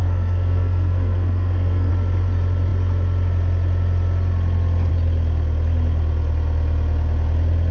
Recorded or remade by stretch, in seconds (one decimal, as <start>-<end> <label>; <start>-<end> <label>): 0.0-1.9 remade; 1.9-7.7 recorded